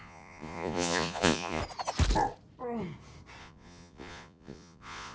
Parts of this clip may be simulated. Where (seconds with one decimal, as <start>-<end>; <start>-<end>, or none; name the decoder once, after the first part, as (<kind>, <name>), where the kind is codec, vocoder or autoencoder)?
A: 0.0-1.6 (vocoder, Vocos); 3.4-5.1

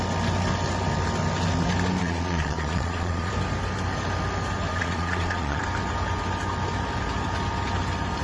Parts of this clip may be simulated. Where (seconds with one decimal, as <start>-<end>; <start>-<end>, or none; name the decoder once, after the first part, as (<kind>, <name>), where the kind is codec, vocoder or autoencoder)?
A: 2.0-3.3 (vocoder, Vocos); 4.7-5.6

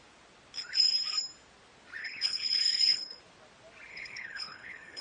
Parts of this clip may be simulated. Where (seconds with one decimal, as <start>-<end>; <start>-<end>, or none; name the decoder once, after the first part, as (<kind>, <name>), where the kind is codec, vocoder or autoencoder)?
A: 2.0-3.2 (codec, HILCodec); 3.9-5.0